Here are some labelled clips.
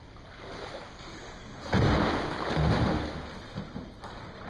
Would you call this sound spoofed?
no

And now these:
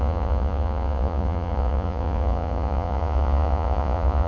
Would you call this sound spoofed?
yes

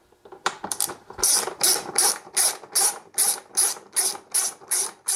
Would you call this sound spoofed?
yes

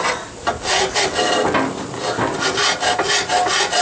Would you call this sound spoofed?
no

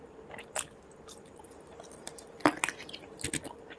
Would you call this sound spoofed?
no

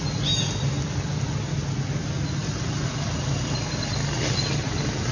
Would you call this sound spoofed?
no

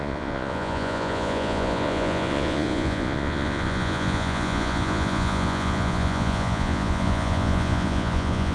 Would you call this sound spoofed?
yes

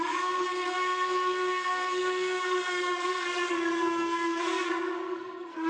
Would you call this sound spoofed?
yes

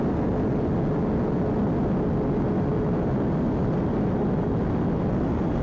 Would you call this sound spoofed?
no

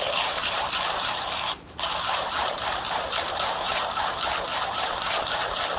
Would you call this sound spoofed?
yes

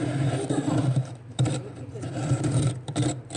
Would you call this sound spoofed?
yes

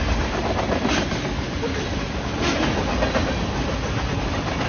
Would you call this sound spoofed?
no